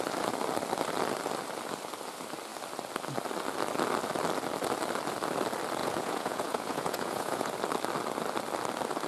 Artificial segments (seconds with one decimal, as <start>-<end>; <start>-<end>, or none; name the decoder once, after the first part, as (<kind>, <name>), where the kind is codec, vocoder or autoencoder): 5.8-7.5 (vocoder, Vocos)